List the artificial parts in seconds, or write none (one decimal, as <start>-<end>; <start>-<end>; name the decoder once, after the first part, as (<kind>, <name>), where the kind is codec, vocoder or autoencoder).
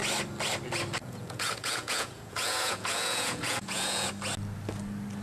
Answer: 1.0-4.1 (vocoder, Vocos)